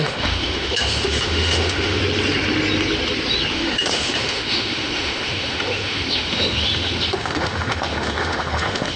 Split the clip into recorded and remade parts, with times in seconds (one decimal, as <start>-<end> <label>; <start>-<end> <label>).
0.0-2.0 remade; 2.0-3.5 recorded; 3.5-9.0 remade